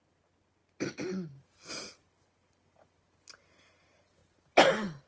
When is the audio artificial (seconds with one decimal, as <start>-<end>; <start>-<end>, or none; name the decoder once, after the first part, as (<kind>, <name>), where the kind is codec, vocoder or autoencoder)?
none